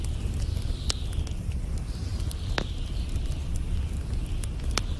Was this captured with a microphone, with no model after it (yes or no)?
yes